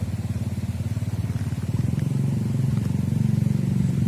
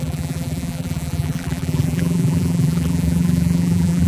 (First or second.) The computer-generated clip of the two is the second